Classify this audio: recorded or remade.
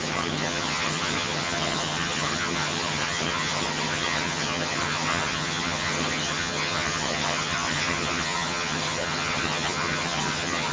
remade